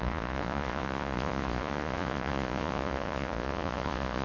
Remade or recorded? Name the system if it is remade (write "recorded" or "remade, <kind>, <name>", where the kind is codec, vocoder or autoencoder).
remade, vocoder, Vocos